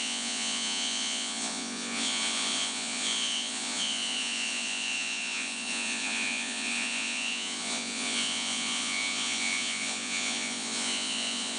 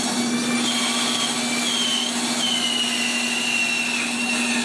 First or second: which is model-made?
first